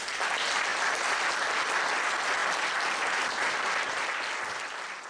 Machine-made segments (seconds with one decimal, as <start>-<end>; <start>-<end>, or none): 0.7-1.5; 2.4-4.0